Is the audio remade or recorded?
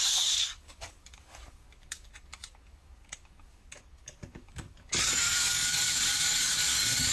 remade